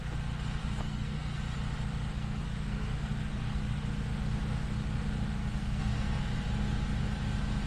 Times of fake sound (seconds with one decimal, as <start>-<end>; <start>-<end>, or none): 0.6-1.4; 2.1-3.8; 5.4-6.2